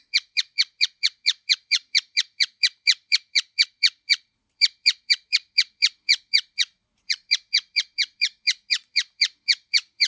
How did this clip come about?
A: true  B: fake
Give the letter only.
B